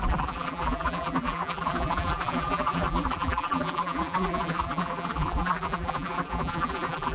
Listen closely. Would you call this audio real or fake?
fake